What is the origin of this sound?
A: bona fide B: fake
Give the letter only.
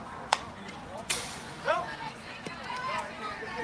B